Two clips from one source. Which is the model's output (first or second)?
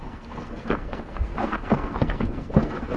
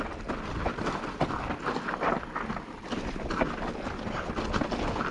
first